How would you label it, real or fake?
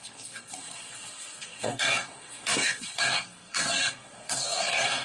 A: fake